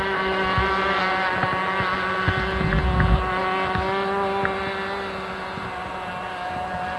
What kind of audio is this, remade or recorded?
recorded